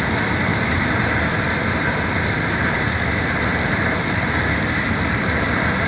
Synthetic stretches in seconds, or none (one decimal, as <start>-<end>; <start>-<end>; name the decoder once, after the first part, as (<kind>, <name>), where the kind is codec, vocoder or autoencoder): 0.5-1.2 (vocoder, BigVGAN v2)